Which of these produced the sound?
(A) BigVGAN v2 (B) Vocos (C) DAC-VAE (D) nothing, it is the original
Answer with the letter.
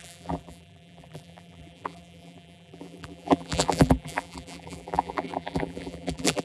A